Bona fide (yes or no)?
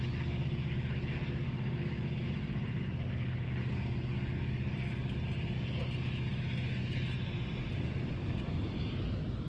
yes